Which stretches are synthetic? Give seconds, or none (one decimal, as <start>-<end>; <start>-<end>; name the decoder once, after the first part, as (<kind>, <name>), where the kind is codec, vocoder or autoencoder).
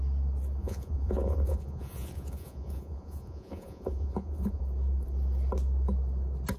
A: 0.6-4.6 (vocoder, Vocos)